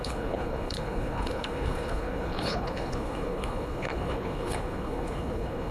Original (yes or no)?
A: no